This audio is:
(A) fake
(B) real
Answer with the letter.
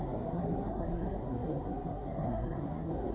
A